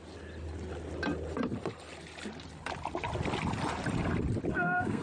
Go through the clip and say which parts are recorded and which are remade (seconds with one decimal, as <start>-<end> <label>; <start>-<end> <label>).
0.0-4.5 recorded; 4.5-5.0 remade